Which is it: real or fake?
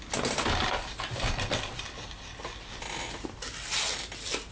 real